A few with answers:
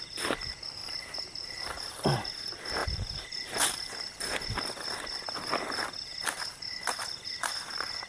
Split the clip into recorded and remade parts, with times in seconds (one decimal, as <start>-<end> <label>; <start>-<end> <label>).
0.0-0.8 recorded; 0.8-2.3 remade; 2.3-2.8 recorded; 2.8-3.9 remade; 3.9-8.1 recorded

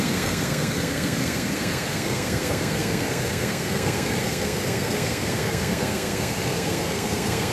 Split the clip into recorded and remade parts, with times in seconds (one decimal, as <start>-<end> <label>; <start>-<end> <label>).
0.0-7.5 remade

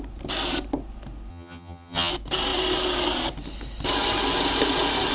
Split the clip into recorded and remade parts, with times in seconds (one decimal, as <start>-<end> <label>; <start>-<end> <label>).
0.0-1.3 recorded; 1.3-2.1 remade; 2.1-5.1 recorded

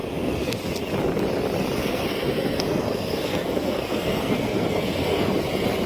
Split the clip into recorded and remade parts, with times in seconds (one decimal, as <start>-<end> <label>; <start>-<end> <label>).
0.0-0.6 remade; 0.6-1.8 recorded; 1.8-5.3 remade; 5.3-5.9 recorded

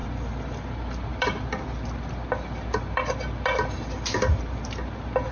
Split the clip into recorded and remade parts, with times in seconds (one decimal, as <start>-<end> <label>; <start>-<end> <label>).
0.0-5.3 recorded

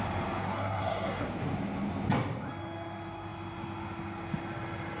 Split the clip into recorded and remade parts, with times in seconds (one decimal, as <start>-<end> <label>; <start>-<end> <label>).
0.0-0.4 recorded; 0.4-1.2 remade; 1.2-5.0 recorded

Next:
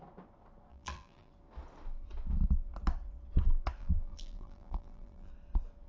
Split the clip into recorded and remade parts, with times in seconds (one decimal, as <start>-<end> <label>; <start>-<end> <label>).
0.0-0.7 recorded; 0.7-1.3 remade; 1.3-3.8 recorded; 3.8-5.3 remade; 5.3-5.9 recorded